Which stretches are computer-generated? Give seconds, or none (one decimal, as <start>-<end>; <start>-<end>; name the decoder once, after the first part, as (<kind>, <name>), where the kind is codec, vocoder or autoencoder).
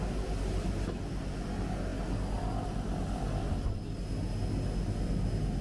none